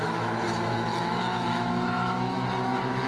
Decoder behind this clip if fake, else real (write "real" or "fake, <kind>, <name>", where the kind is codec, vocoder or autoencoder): fake, autoencoder, DAC-VAE